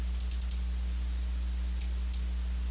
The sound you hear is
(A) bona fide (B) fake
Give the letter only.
A